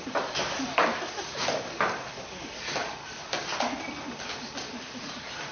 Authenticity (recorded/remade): recorded